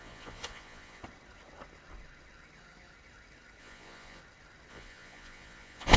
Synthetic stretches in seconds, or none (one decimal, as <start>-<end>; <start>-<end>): 0.0-1.0; 3.6-4.2; 4.7-6.0

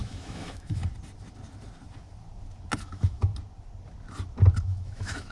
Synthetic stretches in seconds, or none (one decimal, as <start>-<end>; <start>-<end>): 0.0-0.8; 2.8-3.3; 4.6-5.3

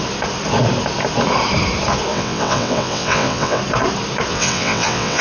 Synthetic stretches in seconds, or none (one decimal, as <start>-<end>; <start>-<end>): 2.1-3.6; 4.3-5.2